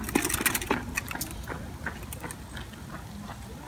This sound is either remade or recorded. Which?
recorded